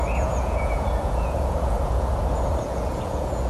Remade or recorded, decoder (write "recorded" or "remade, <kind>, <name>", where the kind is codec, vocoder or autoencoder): remade, vocoder, Vocos